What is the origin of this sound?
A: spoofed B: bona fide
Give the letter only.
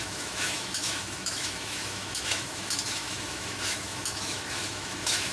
A